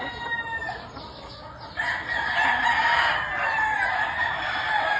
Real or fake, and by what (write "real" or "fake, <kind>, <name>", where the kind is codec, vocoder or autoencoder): real